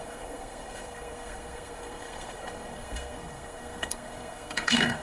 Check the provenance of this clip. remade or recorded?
remade